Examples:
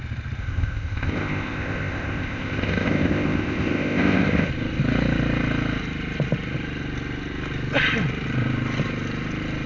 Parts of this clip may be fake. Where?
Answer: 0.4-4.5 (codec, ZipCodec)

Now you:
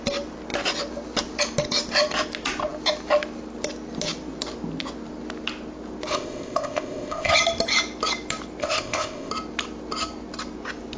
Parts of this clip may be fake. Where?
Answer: 6.1-7.3 (codec, ZipCodec); 8.6-9.3

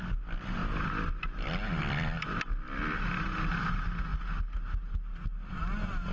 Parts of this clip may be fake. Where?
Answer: none

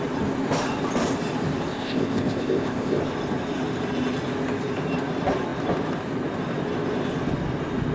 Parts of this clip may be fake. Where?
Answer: 1.7-3.0 (codec, ZipCodec)

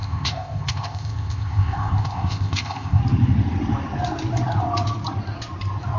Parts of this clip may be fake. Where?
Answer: 0.0-3.0 (codec, ZipCodec)

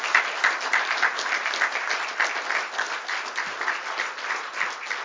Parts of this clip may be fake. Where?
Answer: none

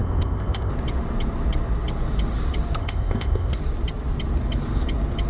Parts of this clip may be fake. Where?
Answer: 0.0-0.7 (codec, ZipCodec); 2.8-3.5

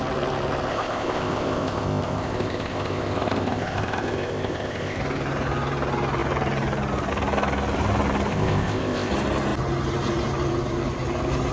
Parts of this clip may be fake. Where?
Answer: 0.7-5.0 (codec, ZipCodec); 8.3-9.1